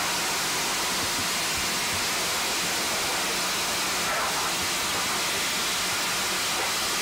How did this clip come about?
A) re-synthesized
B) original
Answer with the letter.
B